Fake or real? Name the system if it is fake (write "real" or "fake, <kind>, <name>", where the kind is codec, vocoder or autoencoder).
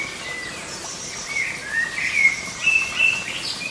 real